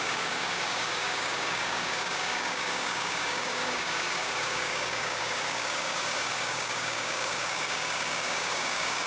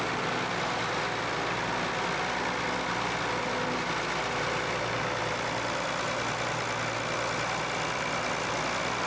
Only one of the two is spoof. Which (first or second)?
first